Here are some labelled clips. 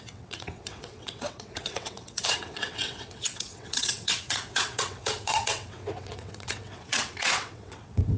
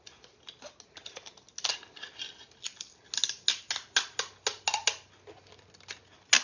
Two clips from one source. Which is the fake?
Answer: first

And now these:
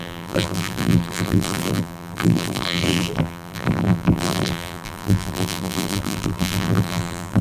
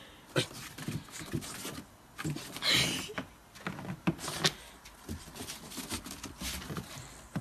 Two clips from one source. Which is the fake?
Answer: first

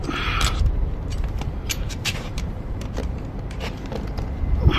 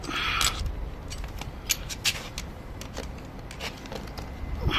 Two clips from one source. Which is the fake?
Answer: first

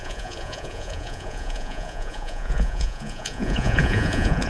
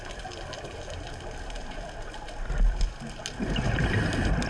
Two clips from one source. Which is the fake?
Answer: first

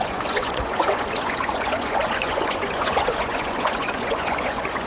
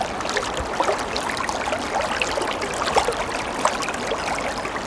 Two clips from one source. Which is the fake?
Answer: first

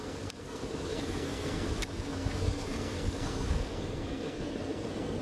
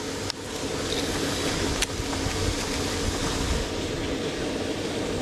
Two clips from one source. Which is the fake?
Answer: first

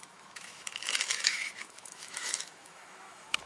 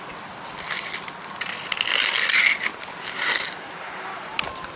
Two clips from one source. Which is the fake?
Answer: first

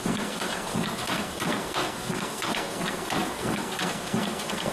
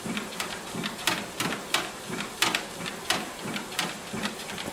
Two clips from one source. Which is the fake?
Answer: first